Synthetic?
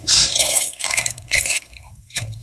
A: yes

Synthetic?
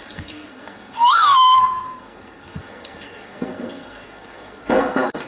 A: yes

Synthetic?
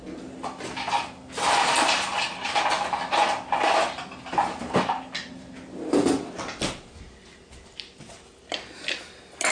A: no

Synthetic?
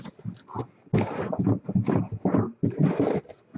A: no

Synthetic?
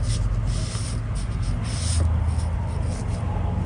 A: no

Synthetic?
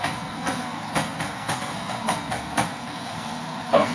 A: yes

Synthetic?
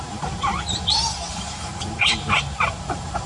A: no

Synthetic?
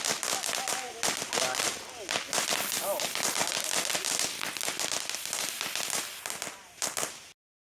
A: no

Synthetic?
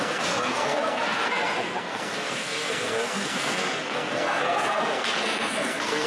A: yes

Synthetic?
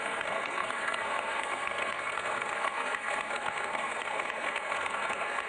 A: yes